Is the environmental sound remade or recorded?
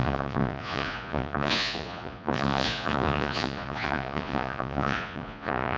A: remade